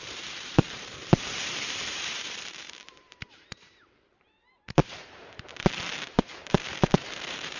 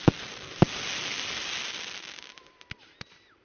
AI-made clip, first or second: first